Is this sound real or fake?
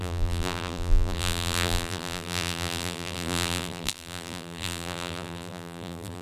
fake